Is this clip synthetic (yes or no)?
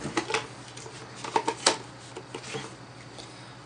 no